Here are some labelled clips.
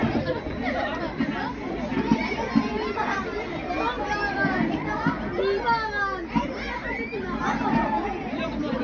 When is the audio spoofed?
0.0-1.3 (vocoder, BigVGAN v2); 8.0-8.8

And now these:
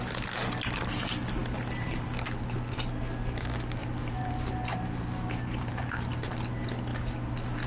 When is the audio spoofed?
3.8-6.3 (vocoder, BigVGAN v2)

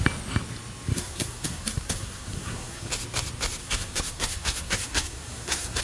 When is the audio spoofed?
0.9-2.9 (codec, SNAC); 3.6-5.8

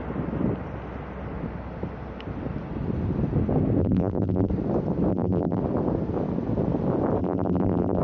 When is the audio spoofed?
3.8-4.5 (vocoder, BigVGAN v2); 5.1-5.6; 7.2-8.0

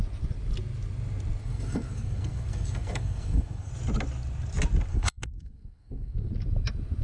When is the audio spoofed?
1.4-3.7 (codec, SNAC); 4.9-6.3